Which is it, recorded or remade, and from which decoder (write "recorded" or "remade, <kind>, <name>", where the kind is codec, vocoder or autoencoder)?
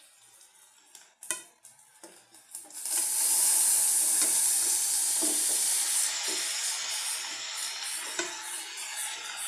recorded